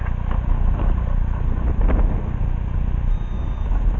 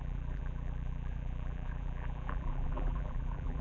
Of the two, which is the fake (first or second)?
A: second